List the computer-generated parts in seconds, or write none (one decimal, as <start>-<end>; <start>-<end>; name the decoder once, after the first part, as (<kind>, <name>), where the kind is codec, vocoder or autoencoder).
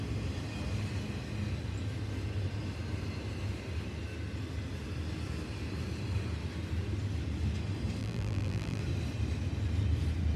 8.0-8.8 (vocoder, BigVGAN v2)